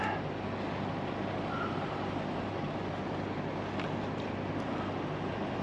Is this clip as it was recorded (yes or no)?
yes